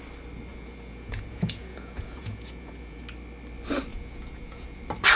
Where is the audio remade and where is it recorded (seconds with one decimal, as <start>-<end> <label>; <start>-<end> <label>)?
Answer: 0.0-0.5 recorded; 0.5-3.0 remade; 3.0-3.9 recorded; 3.9-4.8 remade; 4.8-5.2 recorded